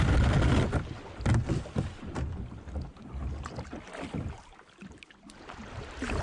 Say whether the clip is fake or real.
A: real